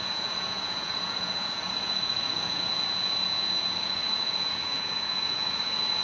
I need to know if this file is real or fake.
fake